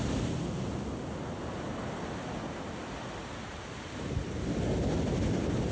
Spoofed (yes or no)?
no